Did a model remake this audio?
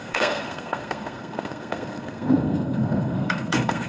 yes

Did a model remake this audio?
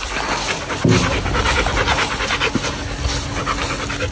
no